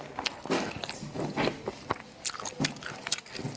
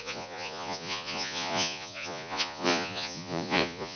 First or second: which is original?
first